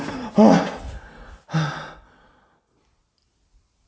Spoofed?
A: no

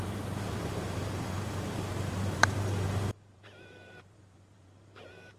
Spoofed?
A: yes